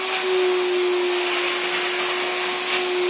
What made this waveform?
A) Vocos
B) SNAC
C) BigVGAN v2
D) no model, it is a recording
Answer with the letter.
D